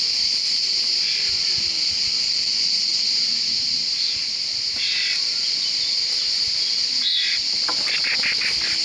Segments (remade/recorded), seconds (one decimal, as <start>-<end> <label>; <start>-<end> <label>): 0.0-8.8 recorded